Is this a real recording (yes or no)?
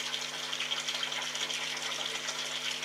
yes